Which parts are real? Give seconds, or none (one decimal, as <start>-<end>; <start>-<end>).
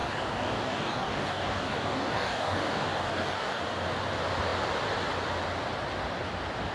3.6-6.7